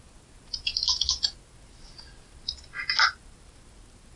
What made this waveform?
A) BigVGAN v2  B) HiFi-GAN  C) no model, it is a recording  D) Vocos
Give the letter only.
C